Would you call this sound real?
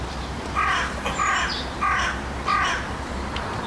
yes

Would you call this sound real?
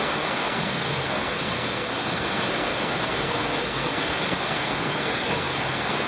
no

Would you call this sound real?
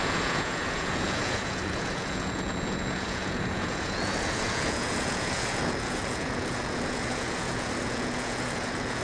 no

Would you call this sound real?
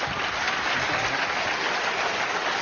yes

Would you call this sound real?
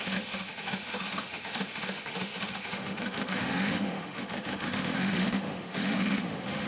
no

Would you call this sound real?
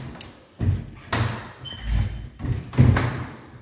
yes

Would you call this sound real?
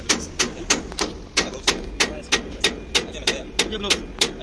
yes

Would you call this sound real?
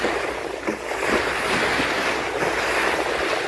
yes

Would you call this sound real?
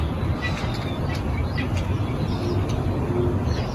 yes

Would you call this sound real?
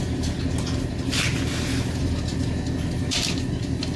yes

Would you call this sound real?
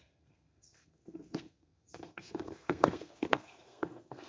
no